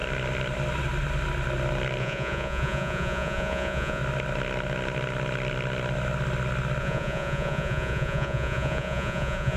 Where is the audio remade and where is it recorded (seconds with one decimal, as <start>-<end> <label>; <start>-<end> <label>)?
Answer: 0.0-2.0 recorded; 2.0-4.0 remade; 4.0-6.8 recorded; 6.8-9.6 remade